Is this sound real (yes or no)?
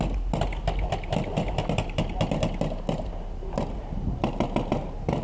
yes